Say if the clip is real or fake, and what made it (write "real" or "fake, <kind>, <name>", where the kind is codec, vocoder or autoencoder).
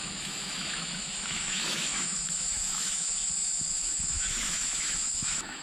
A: fake, autoencoder, DAC-VAE